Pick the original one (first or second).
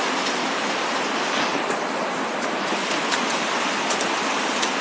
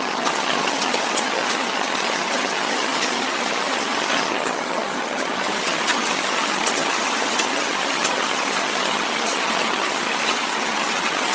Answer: first